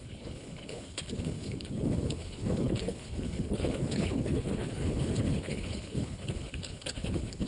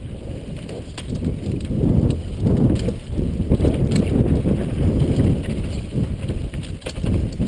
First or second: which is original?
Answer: second